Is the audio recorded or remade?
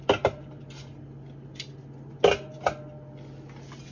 recorded